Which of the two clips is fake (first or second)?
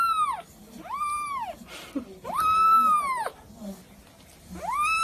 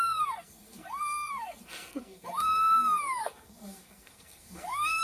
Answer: second